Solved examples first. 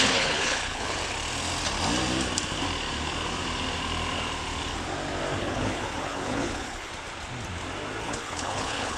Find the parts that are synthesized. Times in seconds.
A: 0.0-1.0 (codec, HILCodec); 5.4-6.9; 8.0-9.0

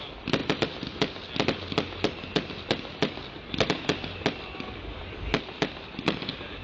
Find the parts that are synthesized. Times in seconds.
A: 0.0-0.4 (vocoder, BigVGAN v2); 4.4-6.6

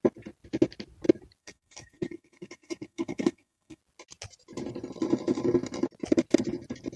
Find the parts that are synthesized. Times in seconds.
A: 1.4-3.8 (codec, SNAC)

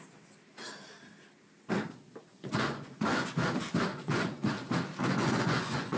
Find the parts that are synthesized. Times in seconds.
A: 2.3-3.3 (vocoder, Vocos); 3.9-4.5; 5.0-6.0

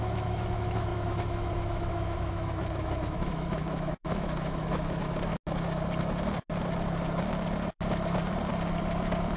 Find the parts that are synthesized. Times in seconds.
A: 0.0-5.3 (autoencoder, DAC-VAE)

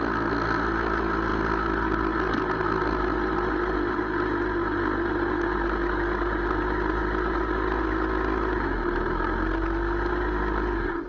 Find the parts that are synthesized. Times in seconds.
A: none

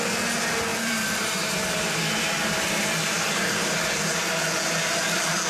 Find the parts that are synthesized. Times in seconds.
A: 0.7-4.0 (vocoder, BigVGAN v2)

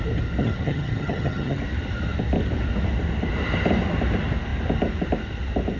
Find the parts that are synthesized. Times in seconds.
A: 0.4-1.6 (vocoder, HiFi-GAN)